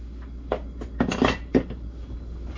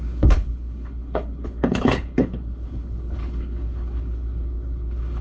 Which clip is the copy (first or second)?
second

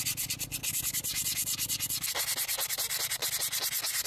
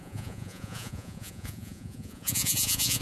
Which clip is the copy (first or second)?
second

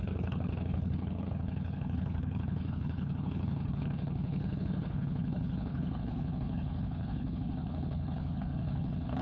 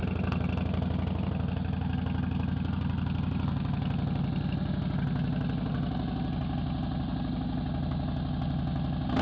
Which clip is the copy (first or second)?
first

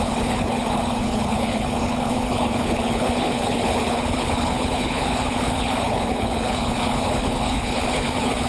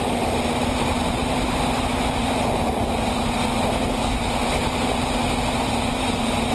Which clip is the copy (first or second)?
first